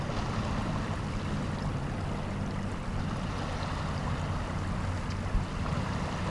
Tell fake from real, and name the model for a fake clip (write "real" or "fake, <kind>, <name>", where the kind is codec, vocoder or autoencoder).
real